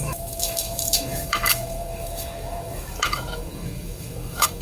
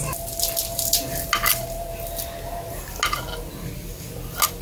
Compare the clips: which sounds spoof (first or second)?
first